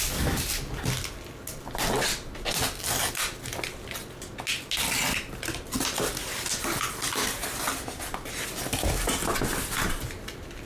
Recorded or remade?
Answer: recorded